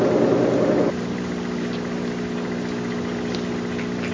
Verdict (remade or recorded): recorded